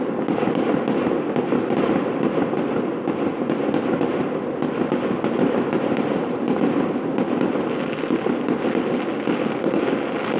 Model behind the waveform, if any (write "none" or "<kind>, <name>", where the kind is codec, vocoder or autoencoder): none